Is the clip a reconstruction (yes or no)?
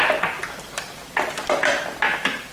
no